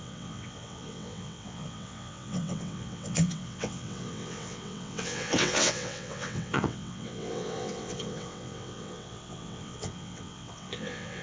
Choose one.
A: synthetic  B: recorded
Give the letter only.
A